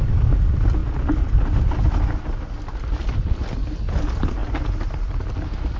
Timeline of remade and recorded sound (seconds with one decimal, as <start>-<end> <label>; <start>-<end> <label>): 0.0-5.8 recorded